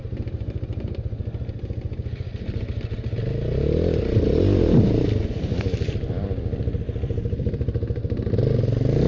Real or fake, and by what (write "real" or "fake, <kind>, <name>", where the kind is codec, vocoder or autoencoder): real